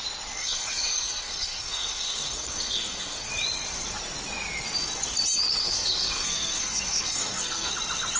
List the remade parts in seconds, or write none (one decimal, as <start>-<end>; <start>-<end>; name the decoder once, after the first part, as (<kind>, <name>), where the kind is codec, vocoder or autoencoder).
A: 0.4-3.3 (codec, SNAC); 5.6-7.7